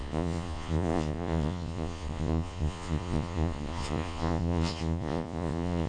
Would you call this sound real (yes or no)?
no